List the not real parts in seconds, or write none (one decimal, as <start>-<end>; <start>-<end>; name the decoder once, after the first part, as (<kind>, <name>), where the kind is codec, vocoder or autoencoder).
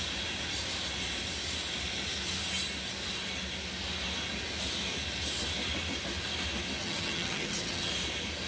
6.8-7.9 (vocoder, HiFi-GAN)